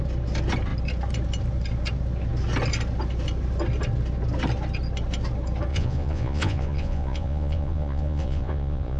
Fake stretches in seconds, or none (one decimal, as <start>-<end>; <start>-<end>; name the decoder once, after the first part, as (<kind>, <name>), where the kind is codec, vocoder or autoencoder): 5.7-9.0 (vocoder, Vocos)